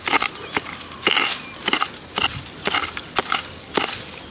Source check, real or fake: real